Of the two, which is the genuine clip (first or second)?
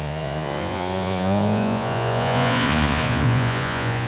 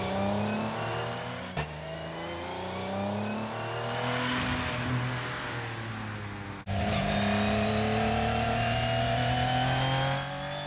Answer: second